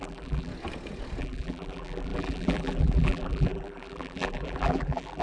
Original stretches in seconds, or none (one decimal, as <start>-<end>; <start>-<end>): 0.5-1.2